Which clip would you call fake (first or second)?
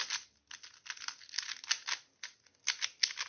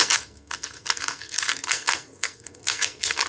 second